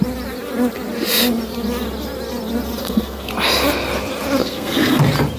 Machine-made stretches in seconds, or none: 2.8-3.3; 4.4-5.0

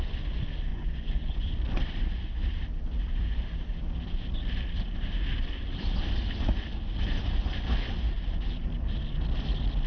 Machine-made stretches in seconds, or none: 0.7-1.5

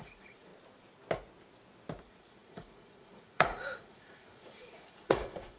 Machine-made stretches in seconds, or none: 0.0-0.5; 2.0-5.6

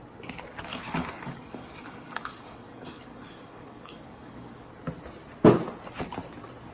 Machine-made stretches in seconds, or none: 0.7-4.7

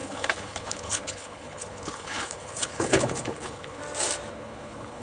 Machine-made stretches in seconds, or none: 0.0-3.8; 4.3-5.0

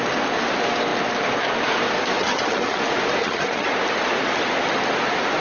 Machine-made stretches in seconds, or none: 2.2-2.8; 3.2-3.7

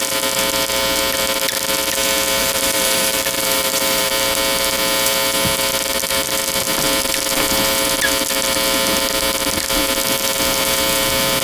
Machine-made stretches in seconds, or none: 2.4-4.1

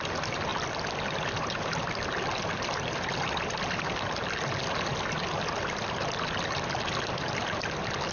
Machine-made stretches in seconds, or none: none